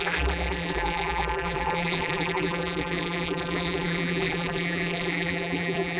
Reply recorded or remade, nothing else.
remade